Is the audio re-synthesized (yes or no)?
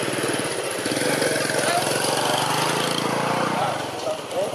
no